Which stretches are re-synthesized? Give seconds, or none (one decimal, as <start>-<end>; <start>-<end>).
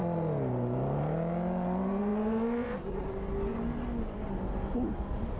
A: none